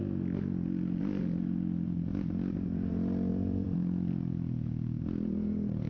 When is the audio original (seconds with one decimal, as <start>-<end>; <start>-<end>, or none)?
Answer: 0.0-2.1; 2.9-3.3; 4.1-5.9